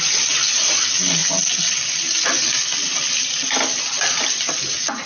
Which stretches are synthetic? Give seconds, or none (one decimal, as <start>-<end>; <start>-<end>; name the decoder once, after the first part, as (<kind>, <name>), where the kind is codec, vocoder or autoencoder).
none